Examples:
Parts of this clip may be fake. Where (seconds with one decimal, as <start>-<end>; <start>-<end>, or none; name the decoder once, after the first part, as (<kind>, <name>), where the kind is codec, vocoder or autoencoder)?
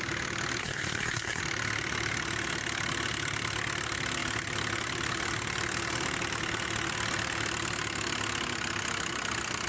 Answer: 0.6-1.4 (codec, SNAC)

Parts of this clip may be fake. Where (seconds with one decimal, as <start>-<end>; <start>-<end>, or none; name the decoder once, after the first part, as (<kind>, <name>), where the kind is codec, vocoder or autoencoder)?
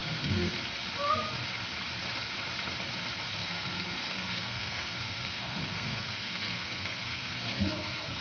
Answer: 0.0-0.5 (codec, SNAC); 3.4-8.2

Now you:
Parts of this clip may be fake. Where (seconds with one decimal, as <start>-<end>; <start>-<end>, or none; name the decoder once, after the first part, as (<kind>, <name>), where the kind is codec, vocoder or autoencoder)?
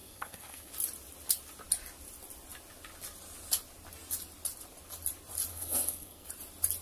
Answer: 0.0-0.7 (codec, SNAC); 5.5-6.3